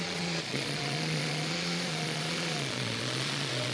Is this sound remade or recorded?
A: remade